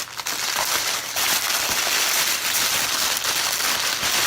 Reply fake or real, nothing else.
real